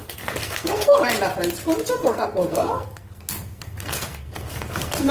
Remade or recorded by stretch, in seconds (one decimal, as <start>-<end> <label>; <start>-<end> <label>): 0.0-1.1 remade; 1.1-1.9 recorded; 1.9-5.1 remade